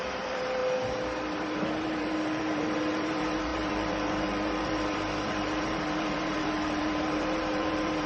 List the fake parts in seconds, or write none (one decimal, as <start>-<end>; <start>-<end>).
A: 0.0-0.6; 1.2-8.1